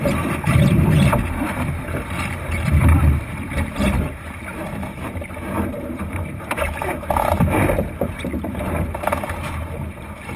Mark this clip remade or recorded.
remade